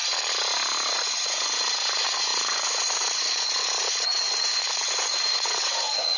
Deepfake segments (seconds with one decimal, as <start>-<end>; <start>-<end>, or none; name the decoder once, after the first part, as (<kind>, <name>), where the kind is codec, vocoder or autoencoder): 0.9-6.2 (vocoder, Vocos)